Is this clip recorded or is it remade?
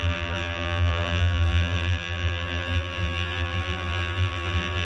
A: remade